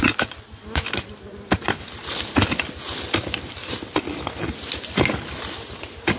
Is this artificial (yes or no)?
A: no